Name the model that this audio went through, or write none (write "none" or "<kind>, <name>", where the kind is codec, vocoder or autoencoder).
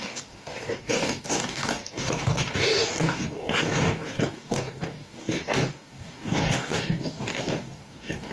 codec, DAC